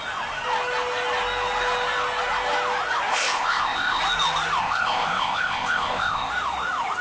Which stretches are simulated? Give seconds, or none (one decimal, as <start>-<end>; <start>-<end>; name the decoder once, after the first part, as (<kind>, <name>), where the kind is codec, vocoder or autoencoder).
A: 3.1-4.0 (codec, ZipCodec); 4.6-6.3